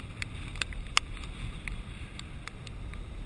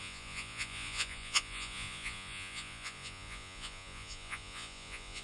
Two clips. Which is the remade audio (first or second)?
second